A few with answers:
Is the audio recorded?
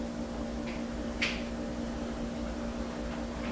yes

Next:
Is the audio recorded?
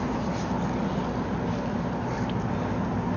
yes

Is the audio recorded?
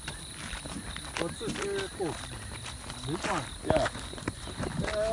yes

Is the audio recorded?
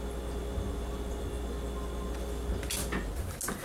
yes